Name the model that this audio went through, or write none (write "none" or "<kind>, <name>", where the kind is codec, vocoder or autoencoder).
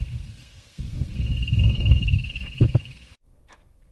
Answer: codec, SNAC